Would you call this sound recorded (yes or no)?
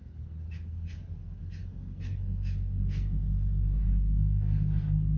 no